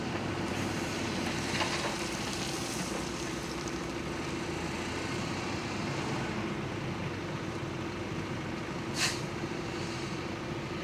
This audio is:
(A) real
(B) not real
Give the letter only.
B